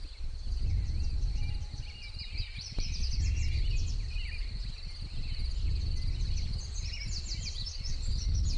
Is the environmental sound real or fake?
real